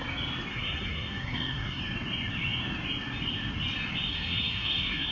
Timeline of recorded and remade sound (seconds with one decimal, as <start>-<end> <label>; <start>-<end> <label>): 0.0-0.5 recorded; 0.5-1.8 remade; 1.8-4.1 recorded; 4.1-5.1 remade